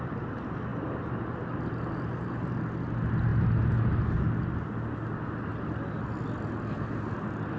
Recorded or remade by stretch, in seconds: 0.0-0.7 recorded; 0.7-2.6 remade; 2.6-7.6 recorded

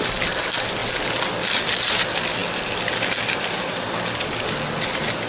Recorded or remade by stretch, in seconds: 0.0-5.3 recorded

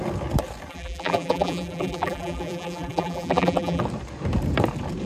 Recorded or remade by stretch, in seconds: 0.0-0.7 recorded; 0.7-3.8 remade; 3.8-5.1 recorded

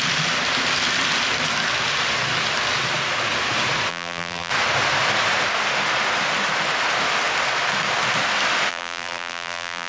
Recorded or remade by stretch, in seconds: 0.0-3.9 recorded; 3.9-4.5 remade; 4.5-8.7 recorded; 8.7-9.9 remade

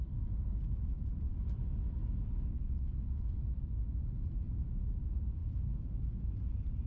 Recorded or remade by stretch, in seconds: 0.0-1.3 remade; 1.3-5.0 recorded; 5.0-6.9 remade

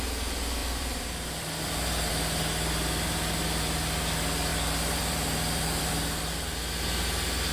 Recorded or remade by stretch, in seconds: 0.0-0.6 recorded; 0.6-2.1 remade; 2.1-4.5 recorded; 4.5-6.6 remade; 6.6-7.5 recorded

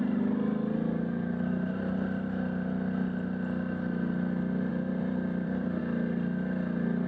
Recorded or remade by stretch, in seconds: 0.0-4.7 recorded; 4.7-5.8 remade; 5.8-7.1 recorded